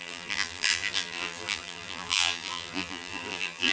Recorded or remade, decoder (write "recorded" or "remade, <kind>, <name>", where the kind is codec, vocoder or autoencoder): remade, vocoder, BigVGAN v2